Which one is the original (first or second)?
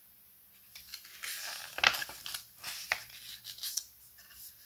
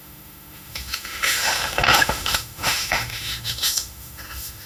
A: first